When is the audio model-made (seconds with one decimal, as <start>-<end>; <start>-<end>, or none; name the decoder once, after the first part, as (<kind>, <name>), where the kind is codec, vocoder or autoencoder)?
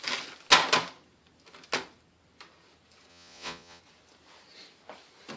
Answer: 3.1-3.8 (vocoder, Vocos)